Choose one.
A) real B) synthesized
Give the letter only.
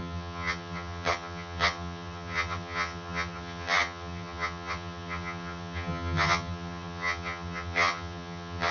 B